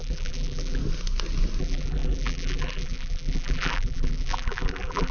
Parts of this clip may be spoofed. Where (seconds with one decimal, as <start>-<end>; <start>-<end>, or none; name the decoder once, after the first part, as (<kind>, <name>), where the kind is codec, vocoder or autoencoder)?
0.0-0.8 (vocoder, BigVGAN v2); 1.6-5.1